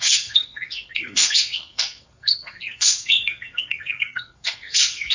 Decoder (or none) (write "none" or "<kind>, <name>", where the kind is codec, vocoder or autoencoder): codec, SNAC